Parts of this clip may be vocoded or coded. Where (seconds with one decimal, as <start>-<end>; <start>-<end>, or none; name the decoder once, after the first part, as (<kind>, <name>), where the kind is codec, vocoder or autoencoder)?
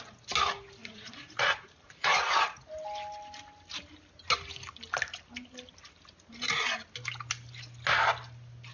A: 0.8-2.2 (vocoder, Vocos)